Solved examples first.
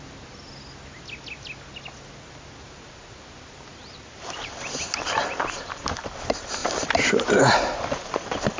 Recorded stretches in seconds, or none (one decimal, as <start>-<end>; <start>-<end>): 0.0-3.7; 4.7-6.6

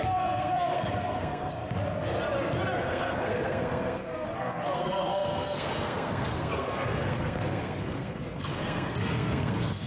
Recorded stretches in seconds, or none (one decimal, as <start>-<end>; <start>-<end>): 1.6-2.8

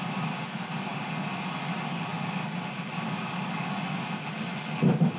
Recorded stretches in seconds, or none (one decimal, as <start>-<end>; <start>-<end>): 0.0-5.2

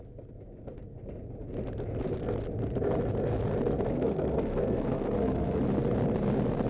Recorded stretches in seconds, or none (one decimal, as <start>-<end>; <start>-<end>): 0.0-3.9; 5.6-6.7

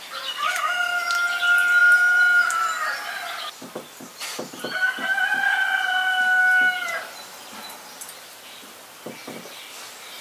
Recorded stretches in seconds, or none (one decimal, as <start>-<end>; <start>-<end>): 0.0-10.2

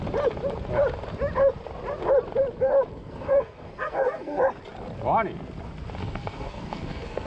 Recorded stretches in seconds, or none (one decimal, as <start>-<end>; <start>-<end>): 0.0-2.9; 4.4-6.0